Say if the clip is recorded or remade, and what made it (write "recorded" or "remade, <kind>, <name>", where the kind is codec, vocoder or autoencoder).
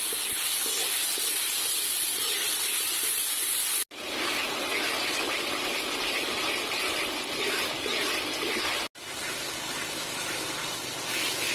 recorded